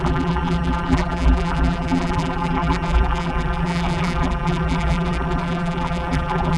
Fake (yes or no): yes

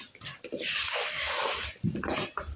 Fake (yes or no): yes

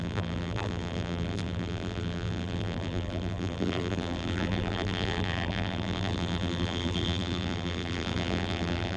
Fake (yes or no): yes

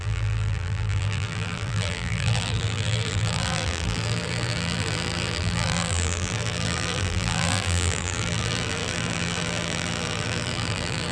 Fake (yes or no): yes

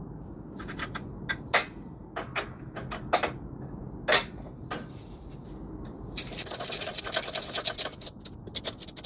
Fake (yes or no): no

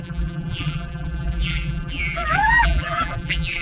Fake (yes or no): yes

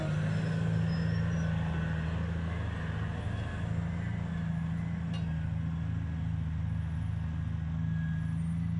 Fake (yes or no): no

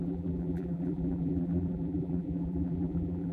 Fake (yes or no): yes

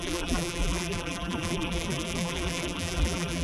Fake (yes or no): yes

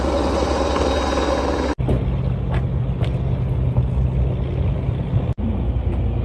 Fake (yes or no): no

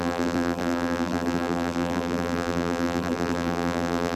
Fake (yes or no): yes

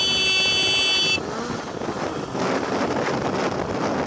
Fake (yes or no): no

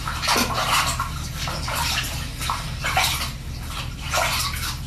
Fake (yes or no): no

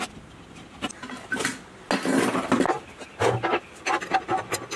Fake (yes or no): no